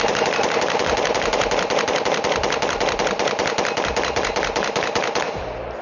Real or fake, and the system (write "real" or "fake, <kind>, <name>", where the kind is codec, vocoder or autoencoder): real